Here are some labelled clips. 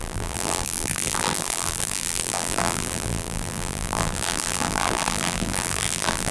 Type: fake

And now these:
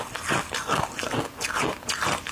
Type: real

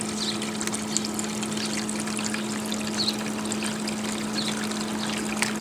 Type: real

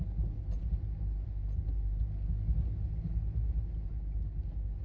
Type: real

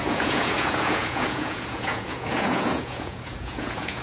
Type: fake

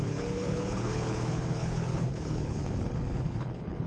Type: fake